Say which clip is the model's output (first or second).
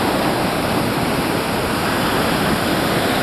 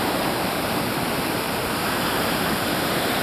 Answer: second